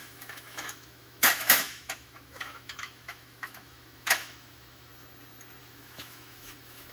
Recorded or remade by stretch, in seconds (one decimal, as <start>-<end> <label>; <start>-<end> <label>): 0.0-4.9 remade; 4.9-5.6 recorded; 5.6-6.9 remade